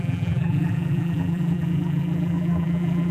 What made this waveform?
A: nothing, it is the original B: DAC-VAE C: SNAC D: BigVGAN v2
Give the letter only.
D